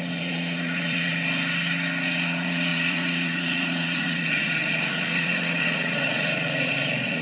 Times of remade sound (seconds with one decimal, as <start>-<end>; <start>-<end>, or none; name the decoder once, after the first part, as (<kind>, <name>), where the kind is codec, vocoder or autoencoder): 0.0-1.1 (vocoder, Vocos); 2.0-7.2